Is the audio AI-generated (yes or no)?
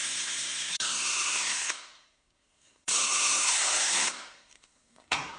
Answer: yes